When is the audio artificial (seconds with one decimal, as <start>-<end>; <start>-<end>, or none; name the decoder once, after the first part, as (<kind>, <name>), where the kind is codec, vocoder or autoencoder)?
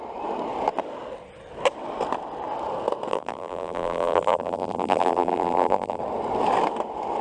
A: 3.1-6.0 (vocoder, BigVGAN v2)